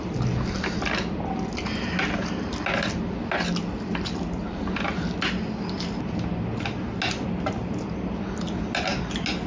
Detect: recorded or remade recorded